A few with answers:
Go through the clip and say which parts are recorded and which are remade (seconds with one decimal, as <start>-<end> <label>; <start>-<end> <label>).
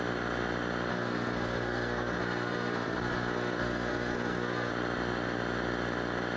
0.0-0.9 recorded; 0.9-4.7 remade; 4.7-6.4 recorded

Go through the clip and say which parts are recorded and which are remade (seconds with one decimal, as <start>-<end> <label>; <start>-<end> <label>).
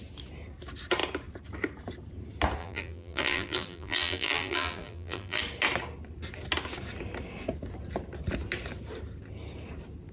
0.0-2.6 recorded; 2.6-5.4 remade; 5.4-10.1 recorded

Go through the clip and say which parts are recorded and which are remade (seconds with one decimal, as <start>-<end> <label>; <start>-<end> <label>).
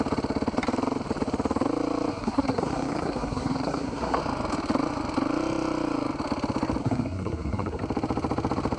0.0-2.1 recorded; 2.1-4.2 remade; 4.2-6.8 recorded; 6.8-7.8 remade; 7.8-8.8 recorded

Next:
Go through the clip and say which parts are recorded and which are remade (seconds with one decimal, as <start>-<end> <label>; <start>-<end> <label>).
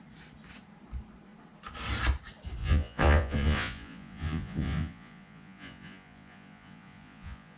0.0-2.6 recorded; 2.6-7.6 remade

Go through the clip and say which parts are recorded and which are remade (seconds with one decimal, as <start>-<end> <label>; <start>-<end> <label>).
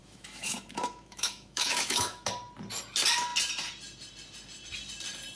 0.0-2.3 remade; 2.3-5.4 recorded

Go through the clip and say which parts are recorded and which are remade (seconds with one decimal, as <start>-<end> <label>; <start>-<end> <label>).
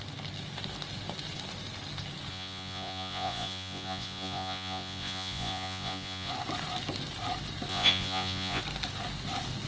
0.0-2.3 recorded; 2.3-6.3 remade; 6.3-7.7 recorded; 7.7-8.6 remade; 8.6-9.7 recorded